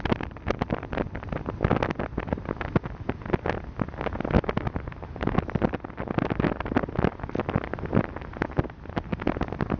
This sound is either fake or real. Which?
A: real